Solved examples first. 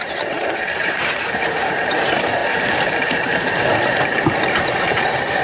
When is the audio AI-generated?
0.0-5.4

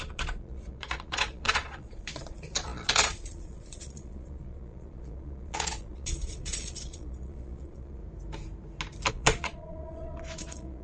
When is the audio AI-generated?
0.0-8.0; 9.1-10.8

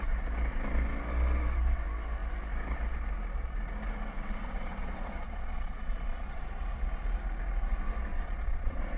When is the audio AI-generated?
4.4-6.6; 8.1-9.0

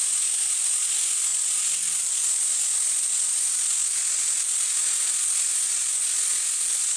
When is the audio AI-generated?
none

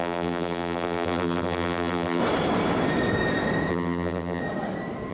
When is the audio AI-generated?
0.0-2.2; 3.7-4.4

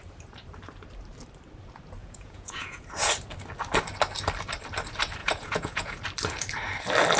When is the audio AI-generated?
2.0-2.9; 5.2-6.0

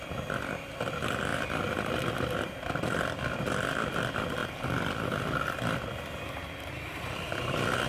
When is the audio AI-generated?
0.0-1.3; 2.1-4.4; 5.6-7.9